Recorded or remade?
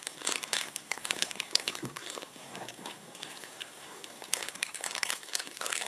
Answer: remade